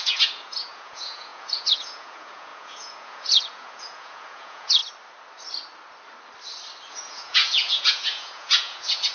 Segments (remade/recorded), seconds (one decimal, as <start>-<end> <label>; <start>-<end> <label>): 0.0-4.8 remade; 4.8-6.9 recorded; 6.9-9.1 remade